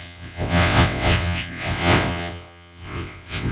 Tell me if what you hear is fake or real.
fake